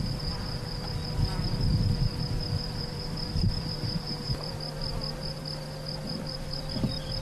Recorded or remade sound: remade